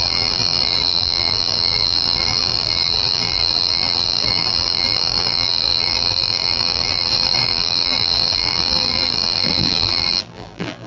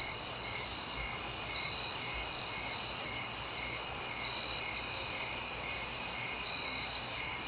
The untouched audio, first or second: second